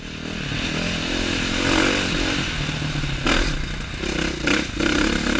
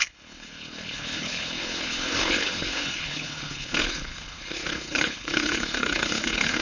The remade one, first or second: second